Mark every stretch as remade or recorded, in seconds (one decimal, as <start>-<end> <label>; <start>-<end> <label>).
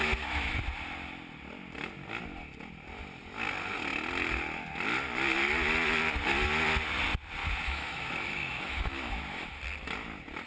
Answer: 0.0-0.6 remade; 0.6-7.4 recorded; 7.4-9.6 remade; 9.6-10.5 recorded